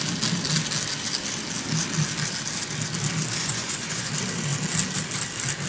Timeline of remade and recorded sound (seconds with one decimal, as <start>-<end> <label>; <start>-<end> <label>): 0.0-3.4 recorded; 3.4-4.1 remade; 4.1-5.7 recorded